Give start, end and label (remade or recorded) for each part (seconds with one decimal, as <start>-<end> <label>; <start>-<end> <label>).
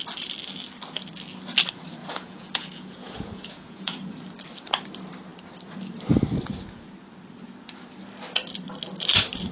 0.0-2.0 recorded; 2.0-4.1 remade; 4.1-9.5 recorded